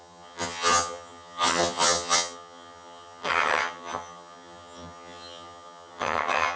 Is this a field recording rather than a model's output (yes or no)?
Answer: no